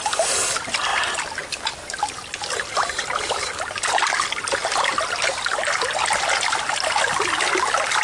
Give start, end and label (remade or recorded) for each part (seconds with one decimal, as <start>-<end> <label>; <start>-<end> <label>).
0.0-8.0 recorded

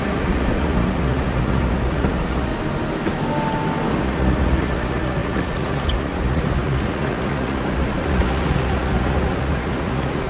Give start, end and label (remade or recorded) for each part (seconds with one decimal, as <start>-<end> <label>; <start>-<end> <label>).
0.0-2.5 remade; 2.5-3.9 recorded; 3.9-10.3 remade

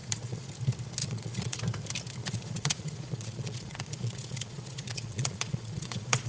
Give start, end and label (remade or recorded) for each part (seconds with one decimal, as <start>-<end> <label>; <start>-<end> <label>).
0.0-0.5 remade; 0.5-1.0 recorded; 1.0-1.6 remade; 1.6-2.2 recorded; 2.2-6.3 remade

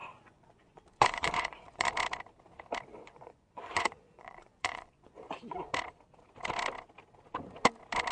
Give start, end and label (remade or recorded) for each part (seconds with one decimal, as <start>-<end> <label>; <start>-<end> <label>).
0.0-1.9 remade; 1.9-2.9 recorded; 2.9-5.7 remade; 5.7-8.1 recorded

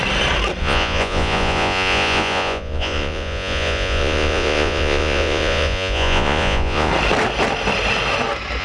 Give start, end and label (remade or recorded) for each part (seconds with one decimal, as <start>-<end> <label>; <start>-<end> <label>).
0.0-0.6 recorded; 0.6-6.9 remade; 6.9-8.6 recorded

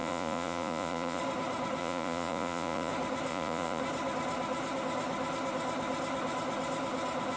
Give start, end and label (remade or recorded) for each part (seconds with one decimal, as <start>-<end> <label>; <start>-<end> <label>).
0.0-1.2 remade; 1.2-1.8 recorded; 1.8-2.9 remade; 2.9-3.3 recorded; 3.3-3.8 remade; 3.8-7.4 recorded

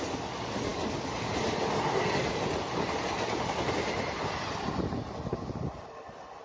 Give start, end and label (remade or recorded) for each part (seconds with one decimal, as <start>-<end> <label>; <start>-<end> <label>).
0.0-6.4 recorded

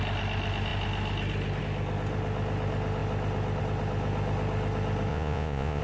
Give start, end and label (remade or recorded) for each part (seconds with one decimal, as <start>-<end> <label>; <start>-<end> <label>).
0.0-5.1 recorded; 5.1-5.8 remade